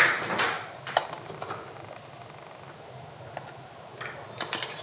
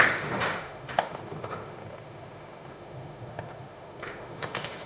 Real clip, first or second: first